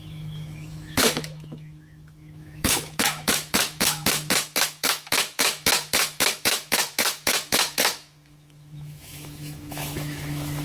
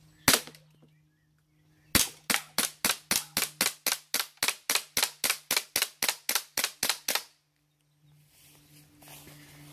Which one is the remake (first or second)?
first